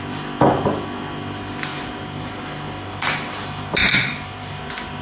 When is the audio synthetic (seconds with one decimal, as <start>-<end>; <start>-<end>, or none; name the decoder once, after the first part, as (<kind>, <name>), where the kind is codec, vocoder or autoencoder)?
1.7-2.3 (vocoder, BigVGAN v2); 3.8-4.5